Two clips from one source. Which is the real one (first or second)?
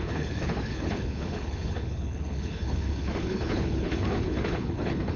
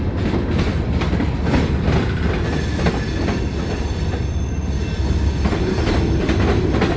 second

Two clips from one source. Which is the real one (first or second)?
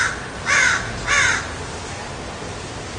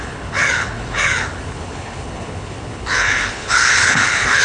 first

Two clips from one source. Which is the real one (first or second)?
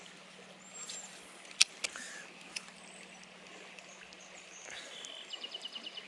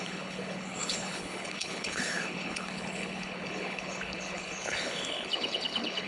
first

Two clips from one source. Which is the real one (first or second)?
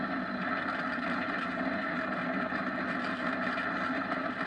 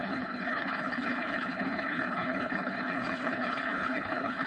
first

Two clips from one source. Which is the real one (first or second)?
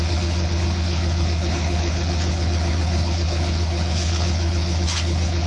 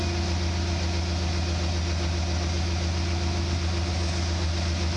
second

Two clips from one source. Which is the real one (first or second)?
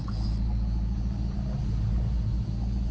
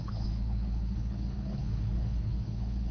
first